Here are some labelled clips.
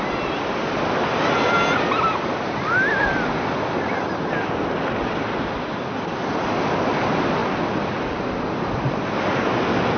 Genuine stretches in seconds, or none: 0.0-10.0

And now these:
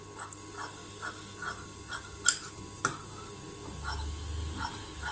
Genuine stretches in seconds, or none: 0.0-5.1

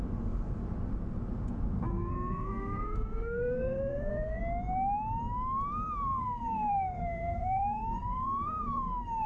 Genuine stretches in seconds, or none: 0.0-1.9; 4.4-6.1